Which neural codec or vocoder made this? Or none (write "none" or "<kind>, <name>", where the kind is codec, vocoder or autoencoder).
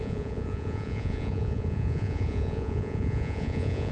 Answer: vocoder, Vocos